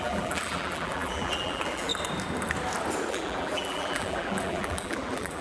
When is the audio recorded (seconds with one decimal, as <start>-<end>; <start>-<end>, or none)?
1.9-3.1